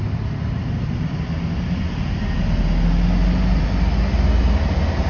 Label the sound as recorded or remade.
recorded